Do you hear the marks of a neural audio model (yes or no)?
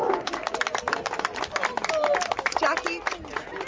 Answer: no